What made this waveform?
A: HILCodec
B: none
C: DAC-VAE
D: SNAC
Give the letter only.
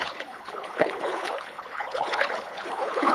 A